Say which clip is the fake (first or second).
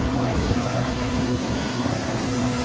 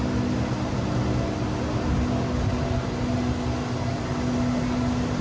first